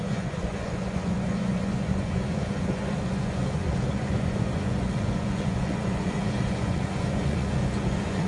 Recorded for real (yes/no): no